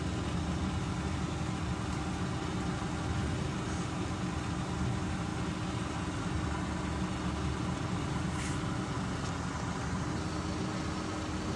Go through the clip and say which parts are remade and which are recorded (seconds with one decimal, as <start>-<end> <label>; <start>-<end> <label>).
0.0-11.6 recorded